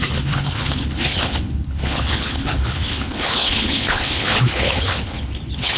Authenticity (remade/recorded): remade